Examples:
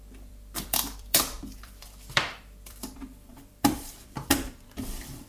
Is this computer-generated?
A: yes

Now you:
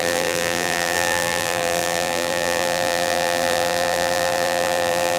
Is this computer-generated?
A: yes